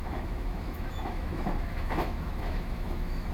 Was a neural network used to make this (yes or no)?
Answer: yes